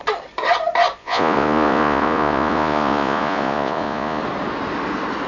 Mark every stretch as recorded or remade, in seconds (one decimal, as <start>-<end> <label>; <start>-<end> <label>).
0.0-1.0 recorded; 1.0-4.2 remade; 4.2-5.3 recorded